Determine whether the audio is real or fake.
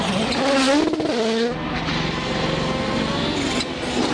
real